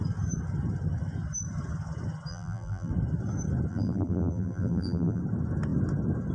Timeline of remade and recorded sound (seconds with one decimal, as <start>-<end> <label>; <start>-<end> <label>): 0.0-2.3 recorded; 2.3-2.9 remade; 2.9-3.7 recorded; 3.7-5.2 remade; 5.2-6.3 recorded